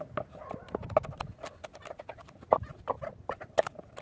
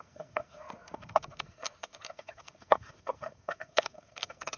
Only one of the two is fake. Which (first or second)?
second